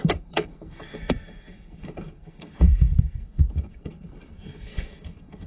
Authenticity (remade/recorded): remade